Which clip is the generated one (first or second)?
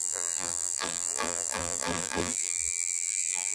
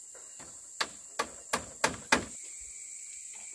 first